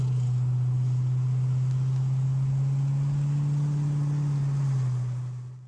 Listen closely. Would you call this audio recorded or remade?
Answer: recorded